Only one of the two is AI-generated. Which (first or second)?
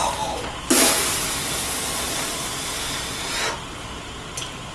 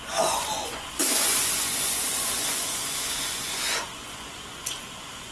second